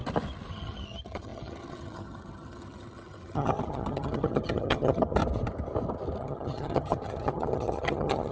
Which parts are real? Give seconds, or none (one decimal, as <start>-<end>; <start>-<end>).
0.0-0.5; 5.2-6.2

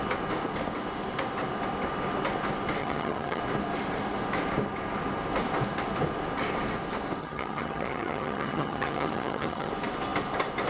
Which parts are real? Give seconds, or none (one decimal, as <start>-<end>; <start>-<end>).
0.0-2.8; 3.4-7.2; 9.7-10.7

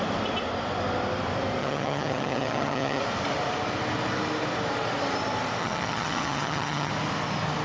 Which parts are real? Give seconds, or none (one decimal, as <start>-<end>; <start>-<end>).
0.0-1.6; 3.0-5.6; 6.9-7.6

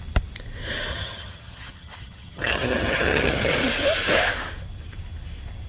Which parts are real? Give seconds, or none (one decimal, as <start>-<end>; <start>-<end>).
0.0-0.9; 3.5-5.7